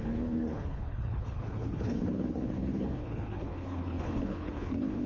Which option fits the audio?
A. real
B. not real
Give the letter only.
B